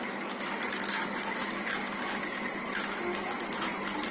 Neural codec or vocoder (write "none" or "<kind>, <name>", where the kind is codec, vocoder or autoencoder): none